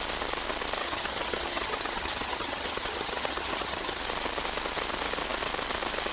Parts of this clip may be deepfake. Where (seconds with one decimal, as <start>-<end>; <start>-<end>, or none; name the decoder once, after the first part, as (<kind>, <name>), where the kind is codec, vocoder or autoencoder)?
0.8-4.0 (vocoder, HiFi-GAN)